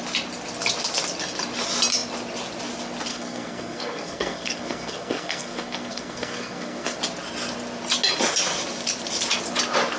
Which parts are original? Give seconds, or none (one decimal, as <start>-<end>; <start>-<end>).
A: 0.0-3.1; 7.0-10.0